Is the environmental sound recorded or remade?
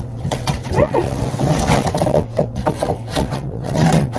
remade